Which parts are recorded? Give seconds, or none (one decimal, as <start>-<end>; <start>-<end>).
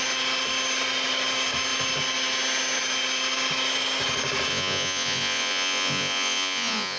0.0-4.5